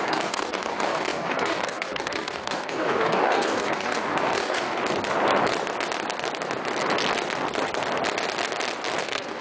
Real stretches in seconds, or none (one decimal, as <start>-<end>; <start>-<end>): 4.8-9.0